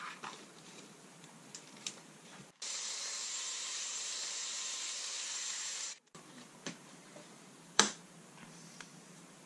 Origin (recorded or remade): remade